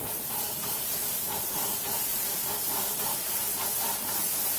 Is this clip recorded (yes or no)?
no